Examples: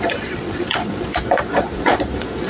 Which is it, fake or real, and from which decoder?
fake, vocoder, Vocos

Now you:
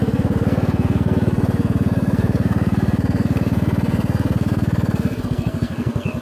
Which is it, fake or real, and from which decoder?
fake, codec, SNAC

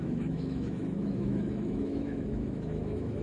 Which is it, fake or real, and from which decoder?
fake, autoencoder, DAC-VAE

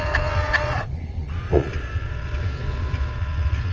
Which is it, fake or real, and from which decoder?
fake, vocoder, Vocos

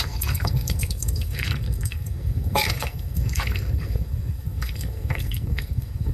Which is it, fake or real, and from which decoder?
fake, codec, SNAC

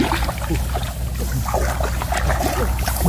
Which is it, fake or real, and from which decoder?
real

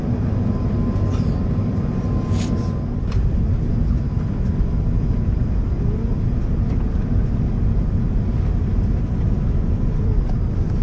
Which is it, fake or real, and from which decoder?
real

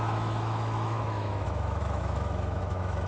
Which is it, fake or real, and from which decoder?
fake, autoencoder, DAC-VAE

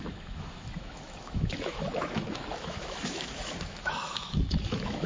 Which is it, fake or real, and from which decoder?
fake, autoencoder, DAC-VAE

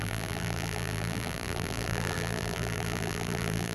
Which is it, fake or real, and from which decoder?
fake, vocoder, BigVGAN v2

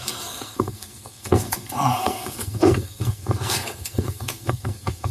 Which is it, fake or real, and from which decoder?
fake, codec, SNAC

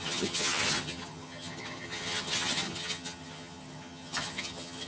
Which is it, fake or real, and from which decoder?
fake, vocoder, HiFi-GAN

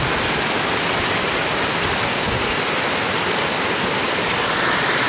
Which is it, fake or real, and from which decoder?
real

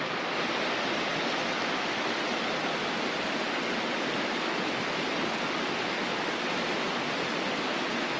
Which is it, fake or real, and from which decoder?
real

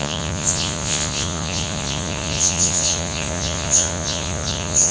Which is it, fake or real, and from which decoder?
fake, vocoder, Vocos